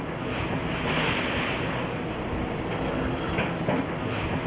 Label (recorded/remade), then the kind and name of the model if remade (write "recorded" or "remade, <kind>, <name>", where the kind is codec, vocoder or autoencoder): recorded